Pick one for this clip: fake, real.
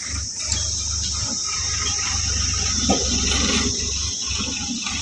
real